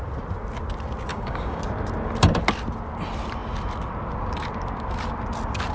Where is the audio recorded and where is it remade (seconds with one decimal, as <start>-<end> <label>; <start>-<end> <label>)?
0.0-1.1 recorded; 1.1-1.6 remade; 1.6-5.7 recorded